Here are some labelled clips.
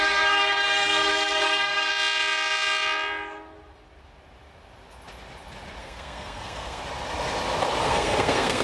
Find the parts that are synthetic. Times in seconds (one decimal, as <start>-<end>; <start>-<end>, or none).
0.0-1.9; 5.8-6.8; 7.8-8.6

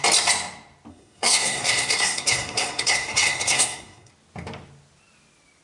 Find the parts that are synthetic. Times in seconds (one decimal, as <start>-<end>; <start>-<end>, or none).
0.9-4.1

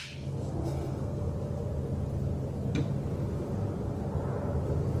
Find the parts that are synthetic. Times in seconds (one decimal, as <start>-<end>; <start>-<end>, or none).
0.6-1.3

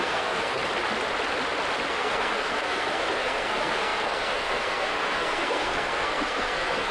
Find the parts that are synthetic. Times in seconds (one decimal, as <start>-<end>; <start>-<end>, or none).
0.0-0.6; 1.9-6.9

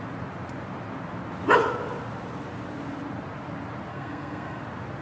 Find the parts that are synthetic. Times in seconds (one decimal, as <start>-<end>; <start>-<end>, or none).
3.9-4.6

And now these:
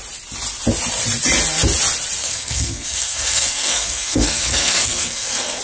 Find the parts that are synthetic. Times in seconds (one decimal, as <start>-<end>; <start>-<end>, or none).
2.2-5.6

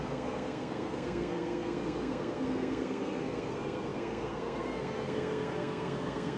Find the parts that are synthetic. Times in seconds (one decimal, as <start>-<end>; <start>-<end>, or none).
0.0-6.4